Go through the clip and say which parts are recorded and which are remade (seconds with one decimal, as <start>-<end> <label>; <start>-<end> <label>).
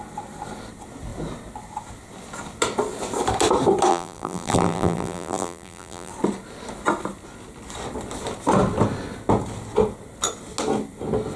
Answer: 0.0-3.9 recorded; 3.9-6.1 remade; 6.1-11.4 recorded